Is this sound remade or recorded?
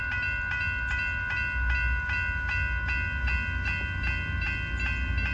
recorded